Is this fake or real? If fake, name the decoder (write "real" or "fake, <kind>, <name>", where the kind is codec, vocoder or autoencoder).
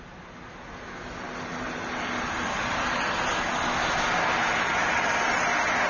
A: real